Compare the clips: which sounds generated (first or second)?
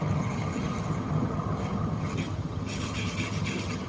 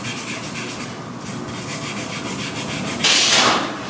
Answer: first